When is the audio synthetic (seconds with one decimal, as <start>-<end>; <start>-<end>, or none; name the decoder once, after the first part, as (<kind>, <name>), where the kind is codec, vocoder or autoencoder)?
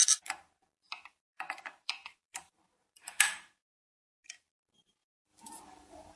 0.0-6.2 (vocoder, BigVGAN v2)